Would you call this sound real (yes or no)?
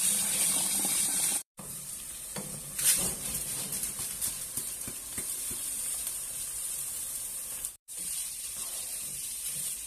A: no